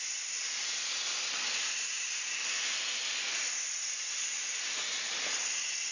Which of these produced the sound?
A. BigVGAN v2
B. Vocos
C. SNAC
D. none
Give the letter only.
D